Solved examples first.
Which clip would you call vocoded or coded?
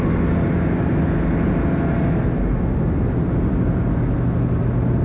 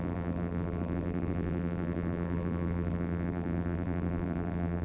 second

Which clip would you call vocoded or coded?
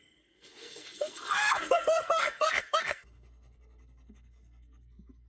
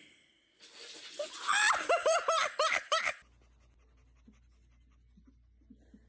first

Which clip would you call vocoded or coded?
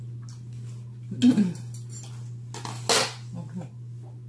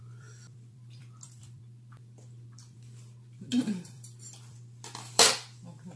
second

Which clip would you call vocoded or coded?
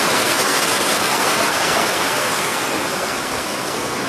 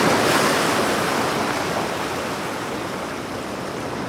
first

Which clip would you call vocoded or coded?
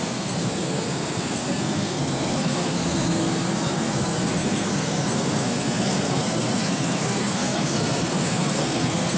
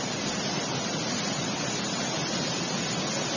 first